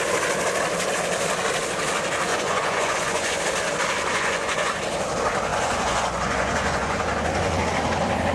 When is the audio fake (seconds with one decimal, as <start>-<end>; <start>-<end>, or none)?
2.3-3.4; 4.1-4.8; 5.5-7.6